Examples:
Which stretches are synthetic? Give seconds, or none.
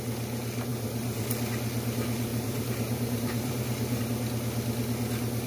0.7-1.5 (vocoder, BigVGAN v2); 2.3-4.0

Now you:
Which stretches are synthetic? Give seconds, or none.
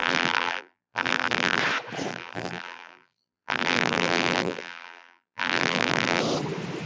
0.0-1.6 (vocoder, BigVGAN v2); 2.1-6.2